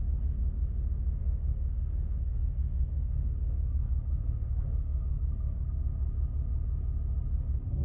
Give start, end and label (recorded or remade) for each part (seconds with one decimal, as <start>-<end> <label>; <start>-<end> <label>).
0.0-1.2 recorded; 1.2-5.8 remade; 5.8-7.8 recorded